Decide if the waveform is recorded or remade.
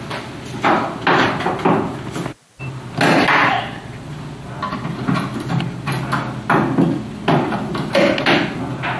recorded